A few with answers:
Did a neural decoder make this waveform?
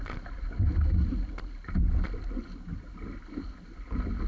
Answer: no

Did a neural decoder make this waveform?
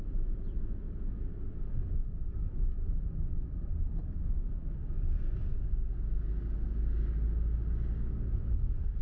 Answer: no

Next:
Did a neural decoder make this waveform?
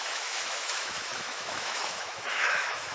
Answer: yes